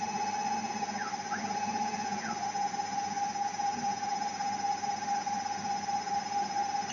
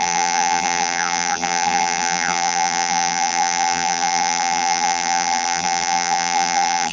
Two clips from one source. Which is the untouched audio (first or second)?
first